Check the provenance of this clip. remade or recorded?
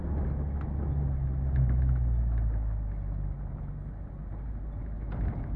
recorded